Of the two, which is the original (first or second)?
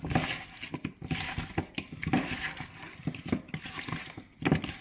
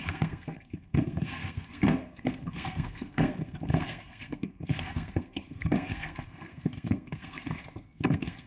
first